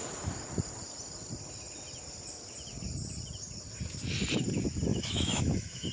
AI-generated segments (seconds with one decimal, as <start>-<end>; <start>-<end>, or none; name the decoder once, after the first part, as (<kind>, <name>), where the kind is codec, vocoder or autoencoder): 4.9-5.9 (autoencoder, DAC-VAE)